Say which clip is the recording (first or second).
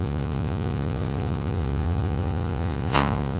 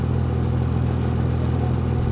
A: second